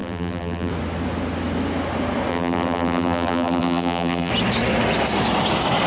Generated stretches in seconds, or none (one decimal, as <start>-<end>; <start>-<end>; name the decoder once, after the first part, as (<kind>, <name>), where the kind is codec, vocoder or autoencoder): 0.0-0.7 (vocoder, BigVGAN v2); 2.3-4.3